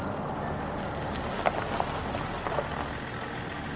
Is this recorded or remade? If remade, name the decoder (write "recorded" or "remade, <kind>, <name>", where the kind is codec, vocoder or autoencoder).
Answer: recorded